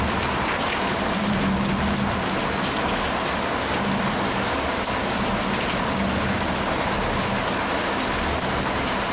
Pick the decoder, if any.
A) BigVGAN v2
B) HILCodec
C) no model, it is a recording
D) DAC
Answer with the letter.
C